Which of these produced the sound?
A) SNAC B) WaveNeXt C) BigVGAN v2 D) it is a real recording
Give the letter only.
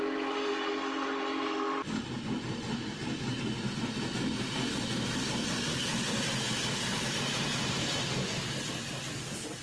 D